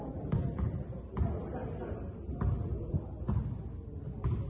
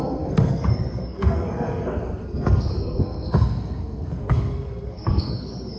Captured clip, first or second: first